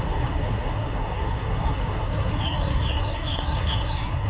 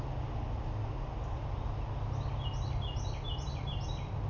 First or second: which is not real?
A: first